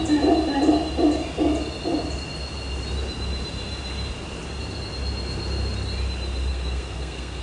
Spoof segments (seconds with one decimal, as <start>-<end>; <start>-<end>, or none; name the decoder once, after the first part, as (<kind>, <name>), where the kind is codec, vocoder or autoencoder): 6.5-7.4 (codec, SNAC)